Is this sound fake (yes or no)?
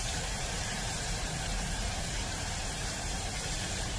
yes